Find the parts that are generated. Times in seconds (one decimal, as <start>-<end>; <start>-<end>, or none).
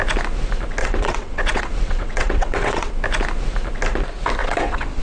0.8-2.9; 4.4-5.0